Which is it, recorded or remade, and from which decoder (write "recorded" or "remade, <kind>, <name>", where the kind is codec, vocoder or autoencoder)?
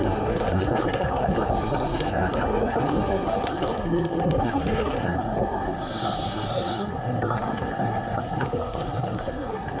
remade, codec, SNAC